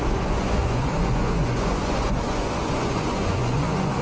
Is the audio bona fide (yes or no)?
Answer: no